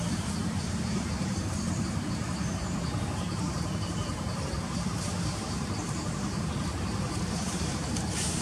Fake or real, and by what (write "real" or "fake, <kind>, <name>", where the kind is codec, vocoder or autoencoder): fake, vocoder, BigVGAN v2